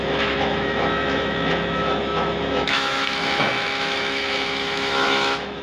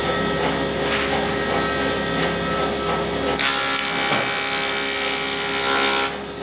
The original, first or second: second